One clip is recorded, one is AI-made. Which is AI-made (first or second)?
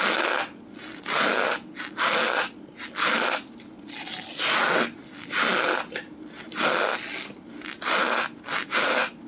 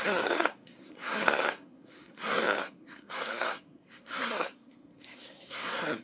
second